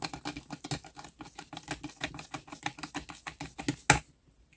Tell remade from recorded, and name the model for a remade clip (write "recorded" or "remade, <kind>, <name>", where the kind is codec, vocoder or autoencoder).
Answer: recorded